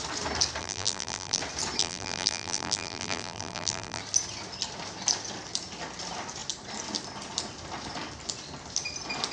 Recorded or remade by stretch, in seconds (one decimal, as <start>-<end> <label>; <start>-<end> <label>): 0.0-0.6 recorded; 0.6-1.4 remade; 1.4-1.8 recorded; 1.8-4.0 remade; 4.0-9.3 recorded